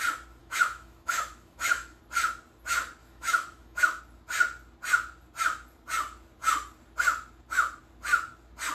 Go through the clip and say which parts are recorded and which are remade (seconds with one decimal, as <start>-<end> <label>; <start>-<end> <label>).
0.0-0.4 recorded; 0.4-2.0 remade; 2.0-3.0 recorded; 3.0-4.0 remade; 4.0-8.7 recorded